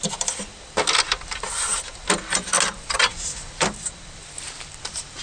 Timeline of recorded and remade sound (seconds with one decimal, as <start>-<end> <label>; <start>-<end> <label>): 0.0-5.2 recorded